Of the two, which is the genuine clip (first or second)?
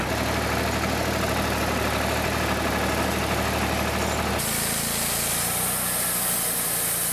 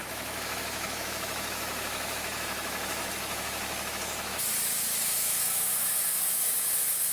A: first